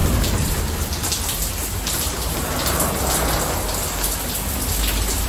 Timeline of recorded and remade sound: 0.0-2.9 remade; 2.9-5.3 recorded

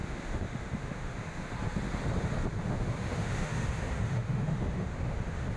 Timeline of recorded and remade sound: 0.0-1.5 remade; 1.5-2.6 recorded; 2.6-5.6 remade

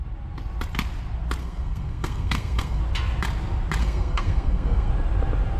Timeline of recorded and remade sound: 0.0-1.4 recorded; 1.4-2.8 remade; 2.8-3.8 recorded; 3.8-4.9 remade; 4.9-5.6 recorded

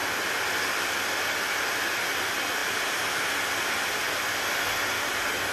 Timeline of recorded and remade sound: 0.0-5.5 recorded